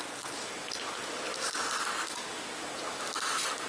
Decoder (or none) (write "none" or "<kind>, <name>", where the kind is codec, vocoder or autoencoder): none